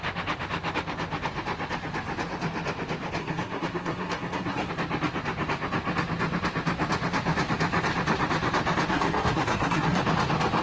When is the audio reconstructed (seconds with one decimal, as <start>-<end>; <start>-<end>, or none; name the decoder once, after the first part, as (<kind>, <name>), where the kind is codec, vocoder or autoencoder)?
3.2-4.7 (codec, SNAC); 8.9-10.0